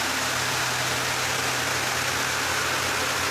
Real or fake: real